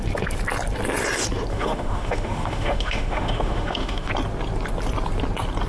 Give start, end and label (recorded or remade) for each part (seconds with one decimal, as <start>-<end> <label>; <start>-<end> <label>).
0.0-1.5 recorded; 1.5-4.1 remade; 4.1-5.7 recorded

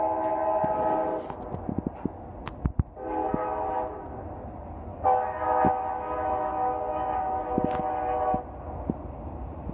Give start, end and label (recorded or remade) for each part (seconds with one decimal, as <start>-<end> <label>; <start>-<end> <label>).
0.0-4.9 recorded; 4.9-7.8 remade; 7.8-9.7 recorded

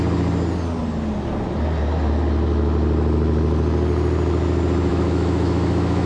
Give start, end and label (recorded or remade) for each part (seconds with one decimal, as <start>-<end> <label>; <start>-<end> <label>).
0.0-4.9 recorded; 4.9-6.1 remade

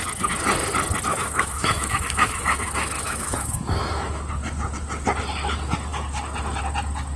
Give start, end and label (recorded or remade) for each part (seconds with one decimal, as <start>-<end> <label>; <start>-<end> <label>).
0.0-1.1 recorded; 1.1-4.2 remade; 4.2-7.2 recorded

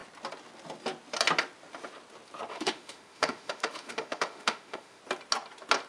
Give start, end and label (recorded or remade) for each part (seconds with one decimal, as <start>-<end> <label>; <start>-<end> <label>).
0.0-2.5 recorded; 2.5-5.0 remade; 5.0-5.9 recorded

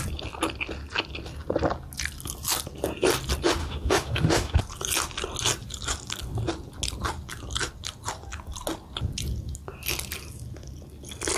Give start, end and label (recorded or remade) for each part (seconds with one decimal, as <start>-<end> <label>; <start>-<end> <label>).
0.0-3.6 recorded; 3.6-4.6 remade; 4.6-11.4 recorded